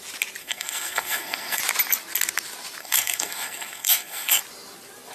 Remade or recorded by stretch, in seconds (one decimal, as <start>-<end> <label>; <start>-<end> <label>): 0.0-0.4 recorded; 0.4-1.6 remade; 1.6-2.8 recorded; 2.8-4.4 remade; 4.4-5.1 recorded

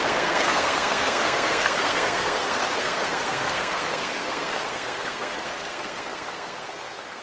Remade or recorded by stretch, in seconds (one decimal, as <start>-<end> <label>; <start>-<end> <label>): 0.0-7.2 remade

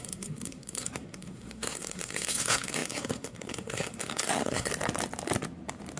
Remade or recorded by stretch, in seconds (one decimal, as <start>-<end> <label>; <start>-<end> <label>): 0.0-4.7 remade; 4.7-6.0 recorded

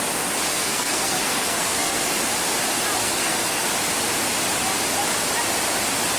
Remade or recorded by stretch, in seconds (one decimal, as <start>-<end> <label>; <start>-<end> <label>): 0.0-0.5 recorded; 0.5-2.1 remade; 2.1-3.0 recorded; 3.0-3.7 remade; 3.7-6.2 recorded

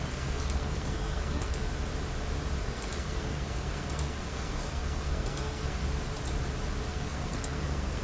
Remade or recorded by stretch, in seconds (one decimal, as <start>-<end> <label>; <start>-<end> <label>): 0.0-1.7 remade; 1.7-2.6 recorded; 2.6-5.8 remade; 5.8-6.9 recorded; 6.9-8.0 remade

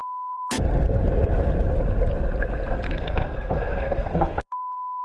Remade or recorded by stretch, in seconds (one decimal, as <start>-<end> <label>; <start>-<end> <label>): 0.0-0.6 remade; 0.6-2.7 recorded; 2.7-5.0 remade

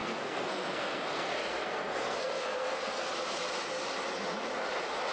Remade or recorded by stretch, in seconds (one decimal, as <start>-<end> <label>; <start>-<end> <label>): 0.0-3.1 remade; 3.1-5.1 recorded

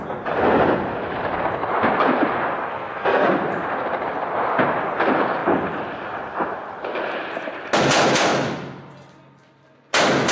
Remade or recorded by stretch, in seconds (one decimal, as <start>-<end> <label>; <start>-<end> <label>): 0.0-2.7 recorded; 2.7-3.3 remade; 3.3-10.3 recorded